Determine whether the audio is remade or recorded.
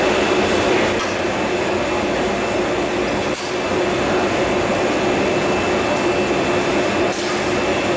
recorded